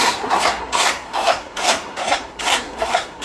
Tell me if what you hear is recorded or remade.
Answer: remade